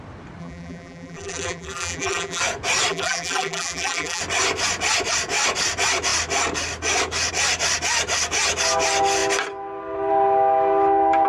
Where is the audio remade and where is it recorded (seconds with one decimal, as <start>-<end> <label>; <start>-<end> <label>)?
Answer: 0.0-0.4 recorded; 0.4-2.4 remade; 2.4-2.9 recorded; 2.9-4.2 remade; 4.2-11.3 recorded